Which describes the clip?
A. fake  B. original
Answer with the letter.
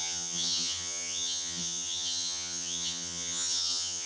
A